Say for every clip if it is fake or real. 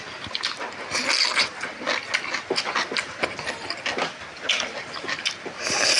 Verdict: real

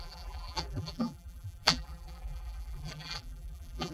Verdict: fake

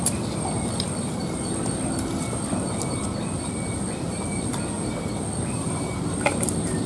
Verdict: real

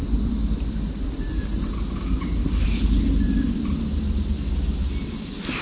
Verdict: real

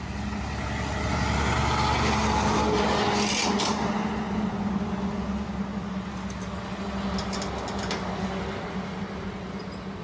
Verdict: real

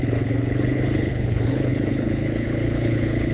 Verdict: fake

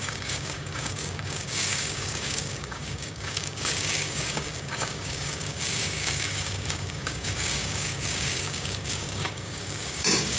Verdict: fake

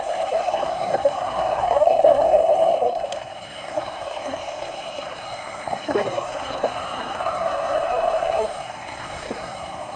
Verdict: fake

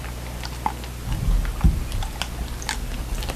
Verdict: real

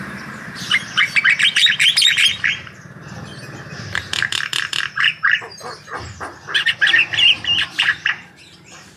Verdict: fake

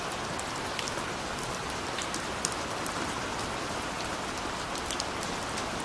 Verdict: real